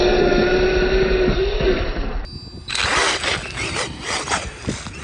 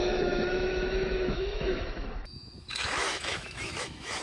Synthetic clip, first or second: second